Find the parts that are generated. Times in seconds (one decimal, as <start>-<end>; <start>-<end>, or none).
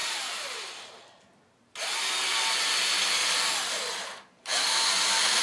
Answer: 0.0-0.9